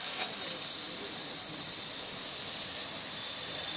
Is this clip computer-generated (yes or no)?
no